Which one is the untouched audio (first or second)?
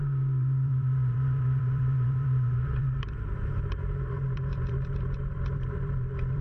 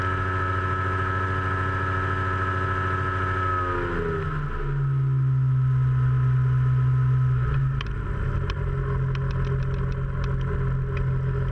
second